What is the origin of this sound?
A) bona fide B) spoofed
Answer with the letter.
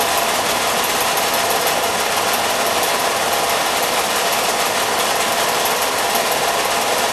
A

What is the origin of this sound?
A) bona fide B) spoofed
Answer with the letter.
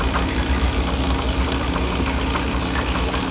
A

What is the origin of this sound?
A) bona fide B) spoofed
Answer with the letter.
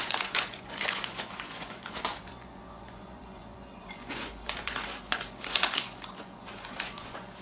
B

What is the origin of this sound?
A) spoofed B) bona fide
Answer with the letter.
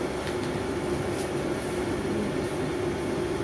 B